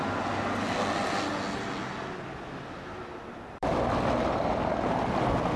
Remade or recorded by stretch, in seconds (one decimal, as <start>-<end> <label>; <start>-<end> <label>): 0.0-5.6 recorded